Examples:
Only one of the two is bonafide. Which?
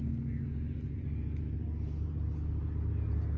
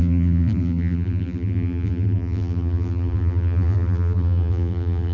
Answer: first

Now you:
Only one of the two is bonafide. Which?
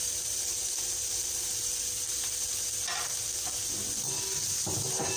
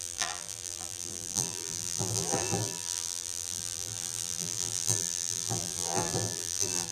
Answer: first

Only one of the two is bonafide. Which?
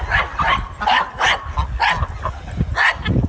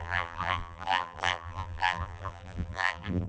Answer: first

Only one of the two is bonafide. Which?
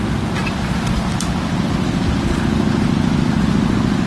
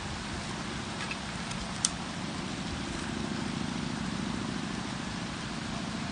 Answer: first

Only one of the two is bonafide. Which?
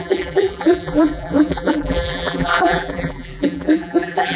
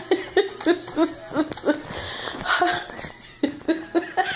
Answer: second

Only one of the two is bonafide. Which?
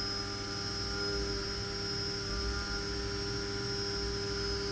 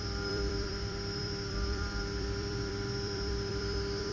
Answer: first